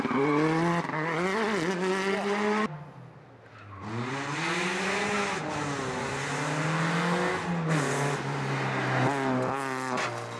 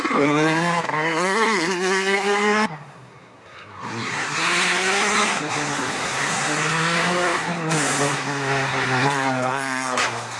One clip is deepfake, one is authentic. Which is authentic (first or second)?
first